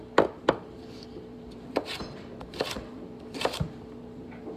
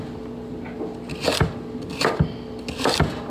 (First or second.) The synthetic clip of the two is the first